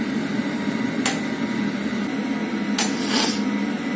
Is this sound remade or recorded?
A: recorded